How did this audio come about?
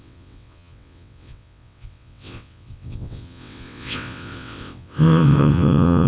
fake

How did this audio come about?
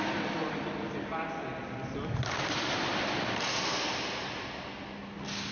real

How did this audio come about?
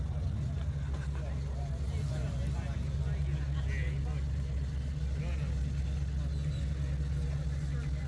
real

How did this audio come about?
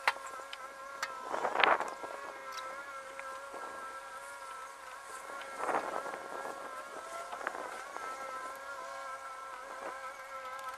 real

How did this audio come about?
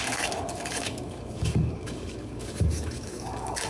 fake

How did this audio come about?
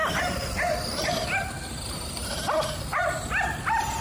real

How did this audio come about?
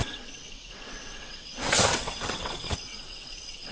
fake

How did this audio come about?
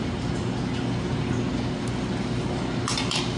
real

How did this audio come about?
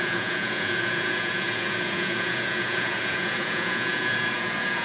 fake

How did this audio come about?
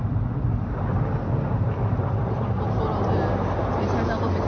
real